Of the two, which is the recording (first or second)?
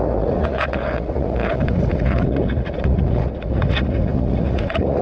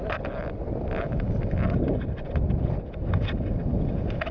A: second